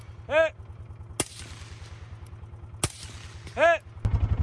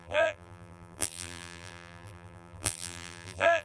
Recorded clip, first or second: first